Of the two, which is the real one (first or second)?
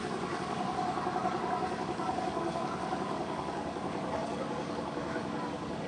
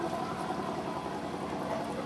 second